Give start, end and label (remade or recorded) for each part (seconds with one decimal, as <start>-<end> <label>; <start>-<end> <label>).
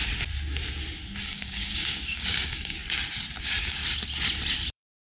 0.0-1.2 recorded; 1.2-2.8 remade; 2.8-3.4 recorded; 3.4-3.8 remade; 3.8-4.7 recorded; 4.7-5.2 remade